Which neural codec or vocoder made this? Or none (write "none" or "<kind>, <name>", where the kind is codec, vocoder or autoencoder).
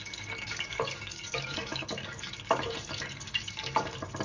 codec, DAC